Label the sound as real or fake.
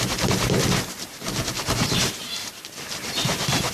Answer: fake